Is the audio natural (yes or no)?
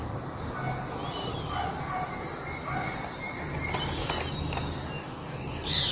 yes